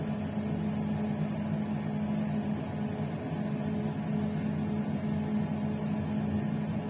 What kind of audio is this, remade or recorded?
recorded